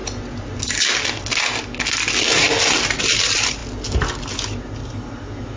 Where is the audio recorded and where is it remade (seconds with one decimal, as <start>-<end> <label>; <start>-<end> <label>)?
0.0-5.6 recorded